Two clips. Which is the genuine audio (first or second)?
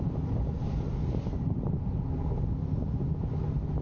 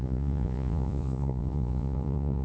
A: first